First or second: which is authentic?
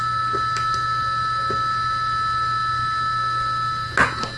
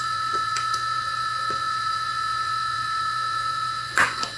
first